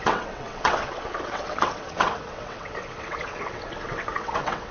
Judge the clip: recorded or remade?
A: remade